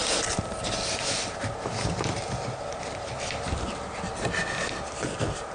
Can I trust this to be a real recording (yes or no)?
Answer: yes